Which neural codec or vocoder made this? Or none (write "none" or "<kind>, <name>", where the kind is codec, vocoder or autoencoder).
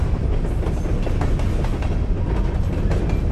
none